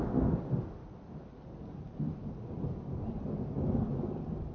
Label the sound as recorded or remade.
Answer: recorded